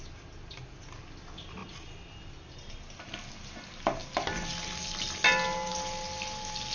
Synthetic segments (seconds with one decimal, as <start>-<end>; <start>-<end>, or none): none